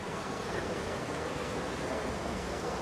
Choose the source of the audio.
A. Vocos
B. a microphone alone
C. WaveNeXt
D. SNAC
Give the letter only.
D